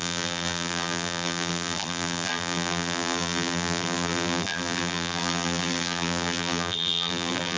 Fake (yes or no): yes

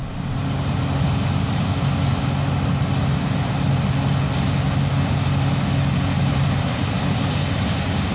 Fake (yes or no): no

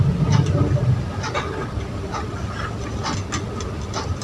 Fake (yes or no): no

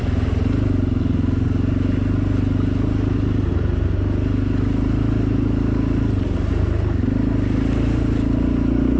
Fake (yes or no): no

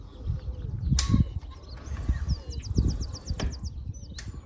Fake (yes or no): no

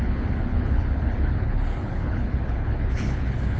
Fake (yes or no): yes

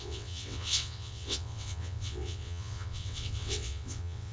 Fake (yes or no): yes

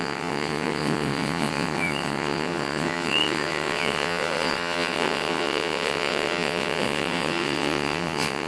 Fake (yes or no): yes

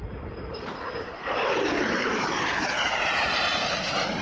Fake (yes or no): yes